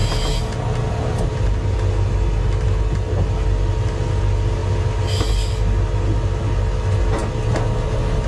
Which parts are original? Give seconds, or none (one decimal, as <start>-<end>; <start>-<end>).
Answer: 0.0-8.3